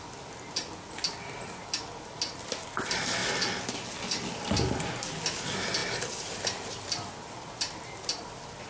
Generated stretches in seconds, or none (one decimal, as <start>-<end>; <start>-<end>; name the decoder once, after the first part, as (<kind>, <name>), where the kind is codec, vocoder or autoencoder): none